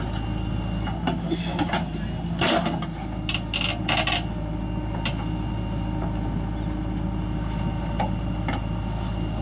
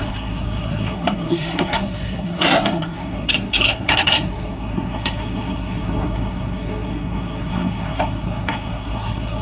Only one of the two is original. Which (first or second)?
first